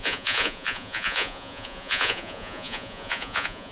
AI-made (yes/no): yes